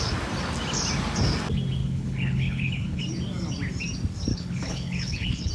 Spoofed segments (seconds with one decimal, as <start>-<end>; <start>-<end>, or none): 1.8-3.0; 4.3-5.5